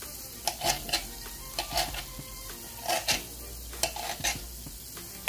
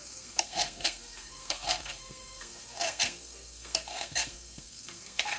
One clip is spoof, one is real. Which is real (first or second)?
first